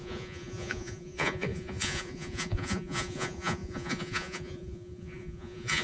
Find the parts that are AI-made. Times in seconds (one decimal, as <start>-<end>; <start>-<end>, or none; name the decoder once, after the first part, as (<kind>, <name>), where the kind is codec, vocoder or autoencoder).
0.0-5.8 (vocoder, Vocos)